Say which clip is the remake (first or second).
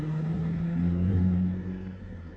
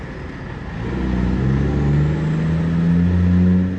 first